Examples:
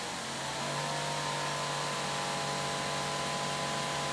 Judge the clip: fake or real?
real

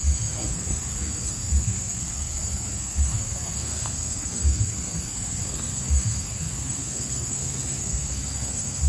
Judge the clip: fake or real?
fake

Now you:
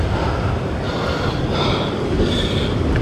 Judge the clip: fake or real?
real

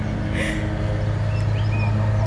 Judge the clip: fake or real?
real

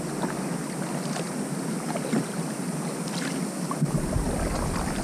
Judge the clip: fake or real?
real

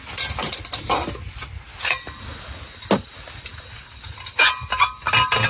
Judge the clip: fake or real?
real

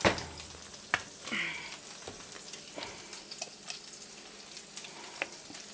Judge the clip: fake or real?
real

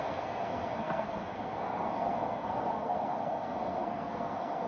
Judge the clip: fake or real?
fake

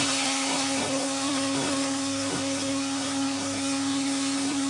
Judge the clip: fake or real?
fake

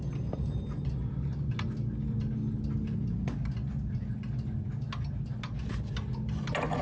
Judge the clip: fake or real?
real